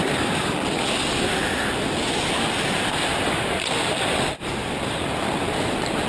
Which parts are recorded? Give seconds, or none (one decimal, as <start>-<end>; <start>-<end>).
1.0-2.6